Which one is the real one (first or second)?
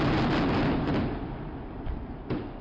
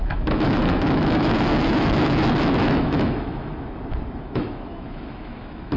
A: first